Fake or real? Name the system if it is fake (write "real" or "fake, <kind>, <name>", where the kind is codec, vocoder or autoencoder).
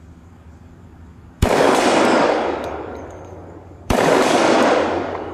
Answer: fake, codec, DAC